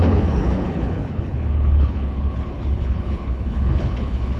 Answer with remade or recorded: remade